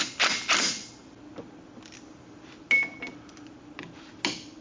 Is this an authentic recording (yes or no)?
yes